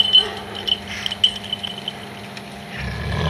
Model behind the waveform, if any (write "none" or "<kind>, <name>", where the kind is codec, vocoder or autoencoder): none